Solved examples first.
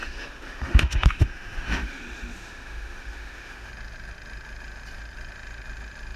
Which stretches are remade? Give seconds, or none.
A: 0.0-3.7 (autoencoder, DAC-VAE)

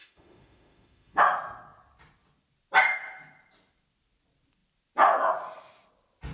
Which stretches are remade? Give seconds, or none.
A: 0.0-1.2 (autoencoder, DAC-VAE)

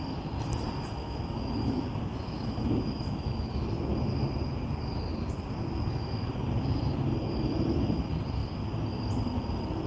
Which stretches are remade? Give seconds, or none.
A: 1.0-3.8 (autoencoder, DAC-VAE)

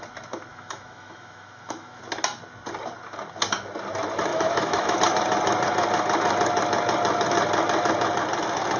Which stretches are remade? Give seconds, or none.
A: 0.5-2.0 (autoencoder, DAC-VAE); 4.3-5.0

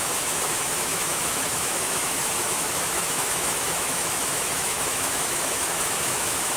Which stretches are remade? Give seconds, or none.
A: 0.0-6.6 (autoencoder, DAC-VAE)

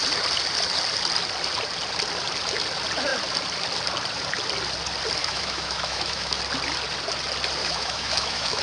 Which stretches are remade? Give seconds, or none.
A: 5.2-6.4 (autoencoder, DAC-VAE); 7.6-8.6

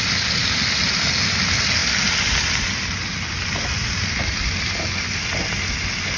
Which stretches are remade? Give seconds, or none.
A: none

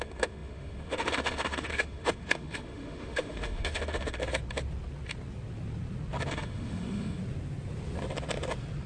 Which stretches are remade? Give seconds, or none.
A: 0.0-4.2 (autoencoder, DAC-VAE); 6.3-7.2